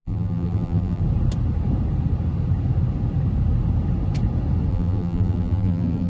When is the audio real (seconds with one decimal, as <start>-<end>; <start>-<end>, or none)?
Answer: 1.0-4.7